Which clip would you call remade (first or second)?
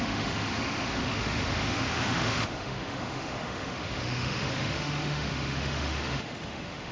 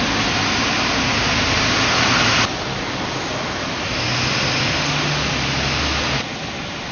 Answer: first